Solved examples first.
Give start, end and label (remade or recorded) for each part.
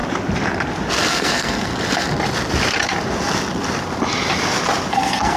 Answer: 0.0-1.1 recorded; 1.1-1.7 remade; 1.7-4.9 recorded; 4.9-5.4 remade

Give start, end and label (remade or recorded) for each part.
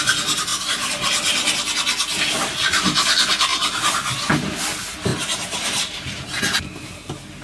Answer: 0.0-0.5 recorded; 0.5-1.5 remade; 1.5-5.1 recorded; 5.1-6.4 remade; 6.4-7.4 recorded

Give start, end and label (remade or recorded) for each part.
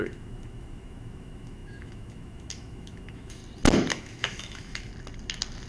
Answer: 0.0-3.4 remade; 3.4-3.9 recorded; 3.9-4.9 remade; 4.9-5.7 recorded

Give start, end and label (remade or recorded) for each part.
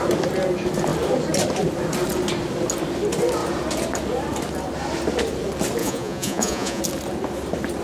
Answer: 0.0-5.8 recorded; 5.8-6.8 remade; 6.8-7.8 recorded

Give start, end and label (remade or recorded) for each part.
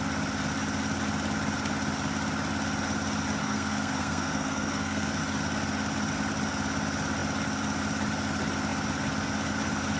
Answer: 0.0-3.4 recorded; 3.4-5.2 remade; 5.2-10.0 recorded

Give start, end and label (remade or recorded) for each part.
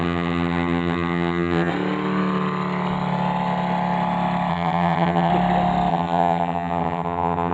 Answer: 0.0-1.7 remade; 1.7-4.5 recorded; 4.5-5.3 remade; 5.3-5.9 recorded; 5.9-7.5 remade